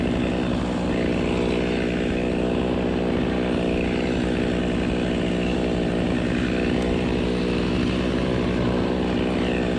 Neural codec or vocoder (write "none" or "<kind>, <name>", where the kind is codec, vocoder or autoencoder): none